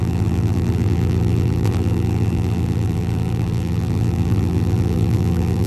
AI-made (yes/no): yes